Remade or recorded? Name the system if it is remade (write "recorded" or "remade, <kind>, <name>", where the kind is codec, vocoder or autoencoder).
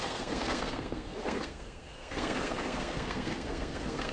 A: remade, codec, SNAC